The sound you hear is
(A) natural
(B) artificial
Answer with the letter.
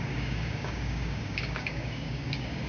B